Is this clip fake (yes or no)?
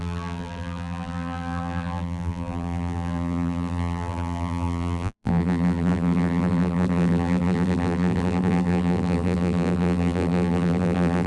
yes